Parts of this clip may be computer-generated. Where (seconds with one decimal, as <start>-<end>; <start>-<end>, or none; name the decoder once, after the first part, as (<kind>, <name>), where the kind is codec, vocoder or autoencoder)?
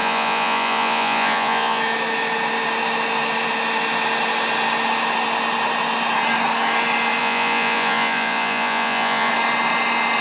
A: 0.0-1.8 (vocoder, Vocos); 7.2-9.3